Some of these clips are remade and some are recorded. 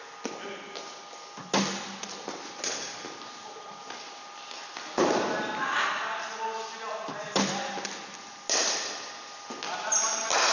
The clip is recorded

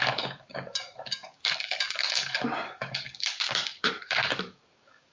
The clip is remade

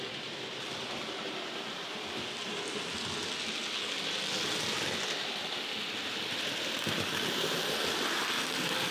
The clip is recorded